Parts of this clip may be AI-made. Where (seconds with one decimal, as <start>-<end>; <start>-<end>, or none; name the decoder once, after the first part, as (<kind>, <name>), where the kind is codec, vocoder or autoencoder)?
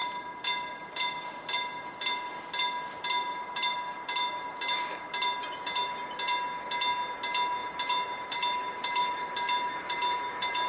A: 7.6-10.7 (vocoder, BigVGAN v2)